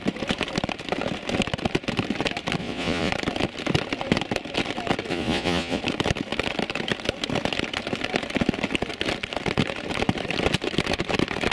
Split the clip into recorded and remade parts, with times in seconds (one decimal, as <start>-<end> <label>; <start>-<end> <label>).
0.0-2.6 recorded; 2.6-3.1 remade; 3.1-5.1 recorded; 5.1-5.8 remade; 5.8-11.5 recorded